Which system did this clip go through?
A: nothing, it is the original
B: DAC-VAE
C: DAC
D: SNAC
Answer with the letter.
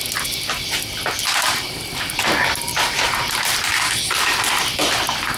A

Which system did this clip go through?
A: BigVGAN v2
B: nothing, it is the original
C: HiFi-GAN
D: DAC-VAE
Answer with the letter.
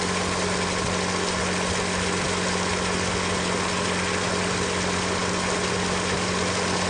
B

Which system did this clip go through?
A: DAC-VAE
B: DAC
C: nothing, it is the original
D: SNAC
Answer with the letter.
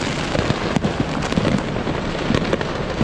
C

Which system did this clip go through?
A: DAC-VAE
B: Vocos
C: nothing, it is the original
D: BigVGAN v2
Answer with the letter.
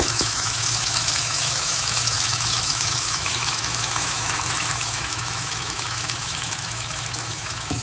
A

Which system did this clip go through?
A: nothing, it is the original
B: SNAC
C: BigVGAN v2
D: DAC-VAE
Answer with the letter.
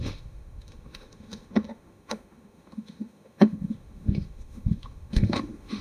D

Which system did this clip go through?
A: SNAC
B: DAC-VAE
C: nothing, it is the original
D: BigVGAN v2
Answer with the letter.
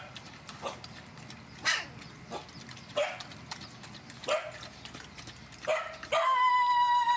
C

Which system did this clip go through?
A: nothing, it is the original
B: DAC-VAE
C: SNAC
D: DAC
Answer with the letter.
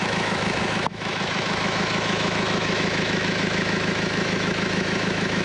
B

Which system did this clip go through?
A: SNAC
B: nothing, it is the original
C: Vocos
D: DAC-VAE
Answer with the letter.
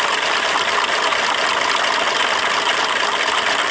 B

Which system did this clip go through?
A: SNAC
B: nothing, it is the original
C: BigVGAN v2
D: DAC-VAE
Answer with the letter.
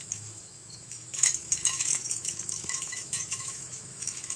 D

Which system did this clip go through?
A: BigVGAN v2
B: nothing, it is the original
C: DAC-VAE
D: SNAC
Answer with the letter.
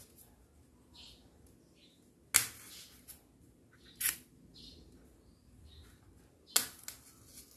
B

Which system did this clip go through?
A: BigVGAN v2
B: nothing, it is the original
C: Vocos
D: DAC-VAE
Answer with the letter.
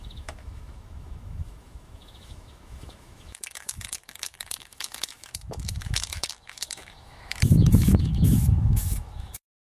D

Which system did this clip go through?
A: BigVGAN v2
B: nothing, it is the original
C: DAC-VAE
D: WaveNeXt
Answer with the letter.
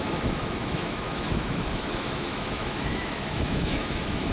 C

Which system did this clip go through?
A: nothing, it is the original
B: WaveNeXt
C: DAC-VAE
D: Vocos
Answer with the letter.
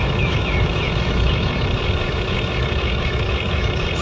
C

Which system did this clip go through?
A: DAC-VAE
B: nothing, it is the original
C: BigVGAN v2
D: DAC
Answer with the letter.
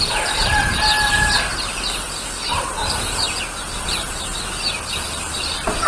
B